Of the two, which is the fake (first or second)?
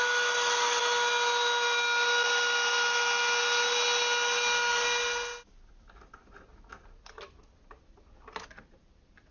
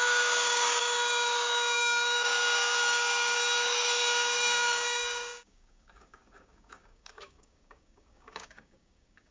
second